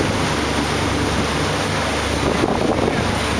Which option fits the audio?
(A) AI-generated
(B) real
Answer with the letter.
B